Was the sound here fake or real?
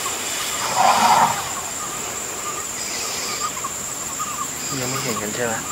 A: fake